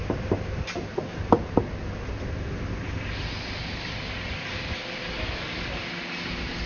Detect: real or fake real